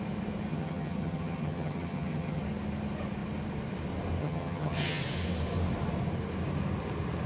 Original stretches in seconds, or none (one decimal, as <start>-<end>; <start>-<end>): 0.0-0.5; 2.4-4.2; 5.0-7.3